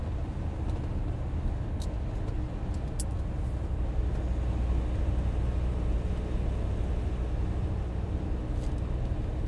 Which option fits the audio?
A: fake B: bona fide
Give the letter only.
B